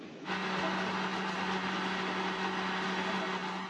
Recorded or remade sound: recorded